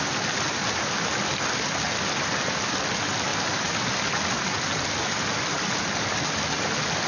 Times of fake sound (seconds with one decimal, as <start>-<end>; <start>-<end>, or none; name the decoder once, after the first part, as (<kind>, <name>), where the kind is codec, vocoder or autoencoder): none